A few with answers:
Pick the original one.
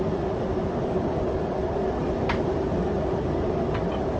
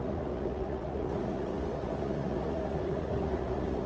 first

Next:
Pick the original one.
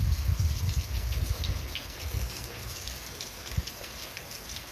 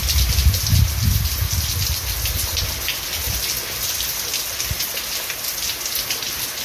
second